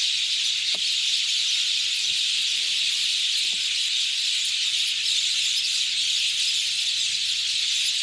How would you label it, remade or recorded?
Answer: recorded